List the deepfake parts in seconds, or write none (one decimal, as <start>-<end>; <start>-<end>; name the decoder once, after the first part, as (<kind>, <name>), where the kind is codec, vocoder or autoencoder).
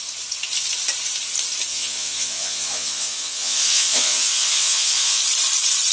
1.7-5.2 (vocoder, Vocos)